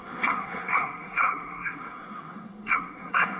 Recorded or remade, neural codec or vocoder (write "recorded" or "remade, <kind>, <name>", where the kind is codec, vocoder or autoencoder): remade, codec, SNAC